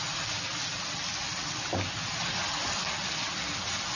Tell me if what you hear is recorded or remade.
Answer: recorded